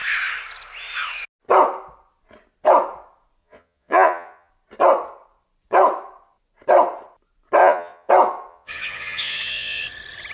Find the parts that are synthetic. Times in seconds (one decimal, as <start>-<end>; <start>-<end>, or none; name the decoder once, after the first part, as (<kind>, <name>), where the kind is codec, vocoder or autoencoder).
3.4-4.5 (vocoder, Vocos); 7.6-8.1; 8.5-9.8